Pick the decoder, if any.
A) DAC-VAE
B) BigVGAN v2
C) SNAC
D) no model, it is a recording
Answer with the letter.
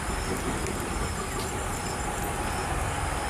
D